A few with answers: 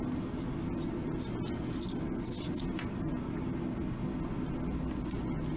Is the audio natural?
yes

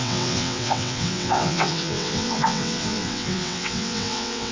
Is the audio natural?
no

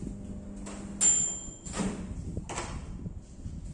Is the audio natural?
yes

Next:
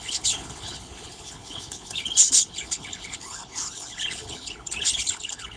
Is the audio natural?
no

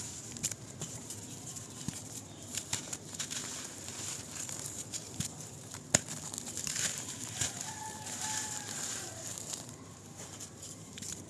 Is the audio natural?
no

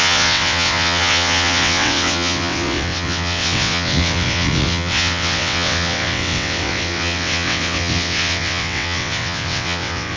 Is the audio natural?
no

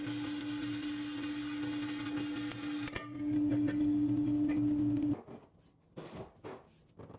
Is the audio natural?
yes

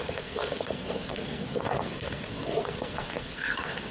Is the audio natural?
no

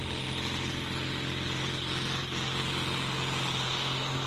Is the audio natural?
yes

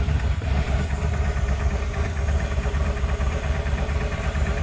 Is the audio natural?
no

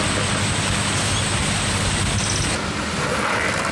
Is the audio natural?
yes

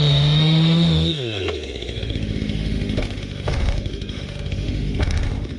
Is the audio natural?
no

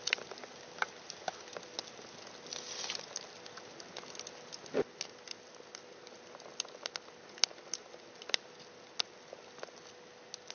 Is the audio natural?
yes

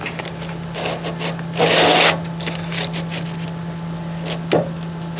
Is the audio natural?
yes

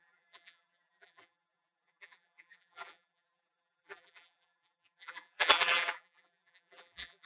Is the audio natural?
no